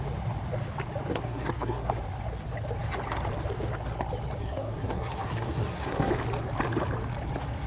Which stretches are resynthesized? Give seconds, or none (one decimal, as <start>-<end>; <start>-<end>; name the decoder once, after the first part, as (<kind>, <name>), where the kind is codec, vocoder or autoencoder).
1.1-1.9 (codec, SNAC); 4.4-6.1